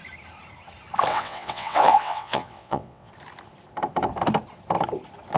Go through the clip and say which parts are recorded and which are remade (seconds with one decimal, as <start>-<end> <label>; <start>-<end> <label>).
0.0-1.1 recorded; 1.1-3.1 remade; 3.1-5.4 recorded